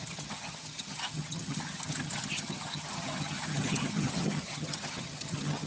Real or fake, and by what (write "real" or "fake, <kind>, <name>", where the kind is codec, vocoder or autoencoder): fake, vocoder, HiFi-GAN